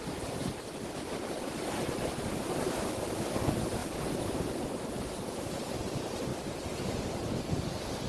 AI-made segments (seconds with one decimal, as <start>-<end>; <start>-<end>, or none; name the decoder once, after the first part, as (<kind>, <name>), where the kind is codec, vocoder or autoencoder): none